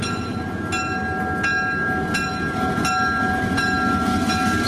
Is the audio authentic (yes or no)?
yes